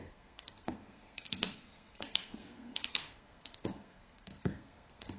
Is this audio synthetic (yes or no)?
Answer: yes